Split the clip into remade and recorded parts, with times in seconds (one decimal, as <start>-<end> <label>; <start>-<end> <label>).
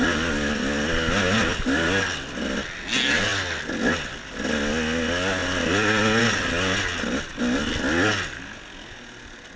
0.0-9.6 recorded